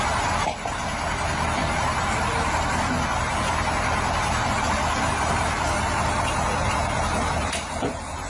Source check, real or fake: real